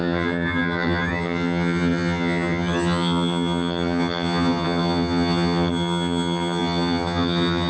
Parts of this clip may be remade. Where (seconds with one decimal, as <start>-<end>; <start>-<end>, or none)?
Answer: 0.0-7.7